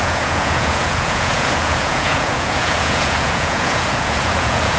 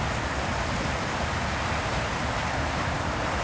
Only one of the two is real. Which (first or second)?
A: second